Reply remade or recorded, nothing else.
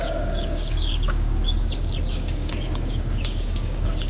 remade